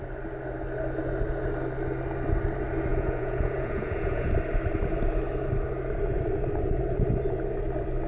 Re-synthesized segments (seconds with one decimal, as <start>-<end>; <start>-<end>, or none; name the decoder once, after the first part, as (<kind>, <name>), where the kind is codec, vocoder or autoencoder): 2.9-4.3 (vocoder, Vocos)